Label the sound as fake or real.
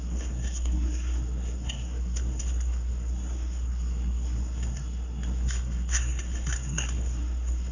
fake